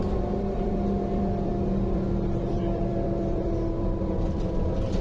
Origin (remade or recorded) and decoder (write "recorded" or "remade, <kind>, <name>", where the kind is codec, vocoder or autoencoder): remade, vocoder, BigVGAN v2